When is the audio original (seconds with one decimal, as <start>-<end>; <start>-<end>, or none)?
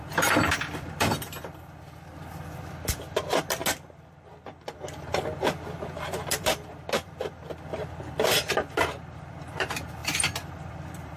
3.6-5.4